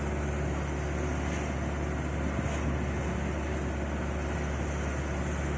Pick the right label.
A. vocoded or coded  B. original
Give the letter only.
B